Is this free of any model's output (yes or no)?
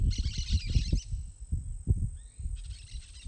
yes